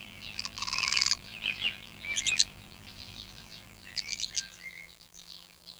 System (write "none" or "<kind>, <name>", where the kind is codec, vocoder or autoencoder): vocoder, BigVGAN v2